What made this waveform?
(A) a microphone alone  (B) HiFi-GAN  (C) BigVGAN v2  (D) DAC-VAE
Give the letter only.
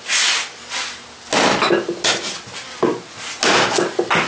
A